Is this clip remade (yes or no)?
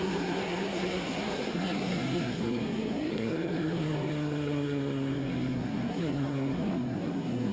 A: yes